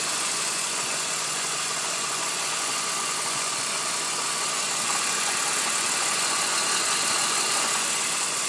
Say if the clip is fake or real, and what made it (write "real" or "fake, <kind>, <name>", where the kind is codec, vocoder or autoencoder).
fake, vocoder, Vocos